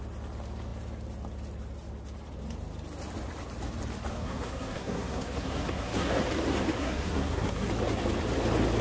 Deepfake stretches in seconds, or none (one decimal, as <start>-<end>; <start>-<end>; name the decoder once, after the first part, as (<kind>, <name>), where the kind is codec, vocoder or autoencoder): 4.1-6.1 (codec, SNAC); 6.8-7.7